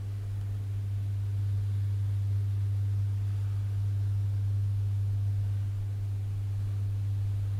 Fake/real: real